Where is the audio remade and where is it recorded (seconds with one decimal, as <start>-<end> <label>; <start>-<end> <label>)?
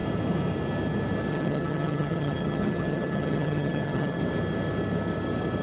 0.0-1.3 recorded; 1.3-4.2 remade; 4.2-5.6 recorded